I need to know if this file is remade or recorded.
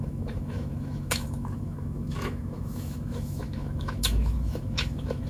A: remade